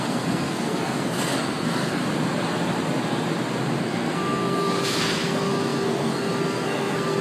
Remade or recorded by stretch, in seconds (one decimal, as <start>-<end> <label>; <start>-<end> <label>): 0.0-2.0 remade; 2.0-3.8 recorded; 3.8-7.2 remade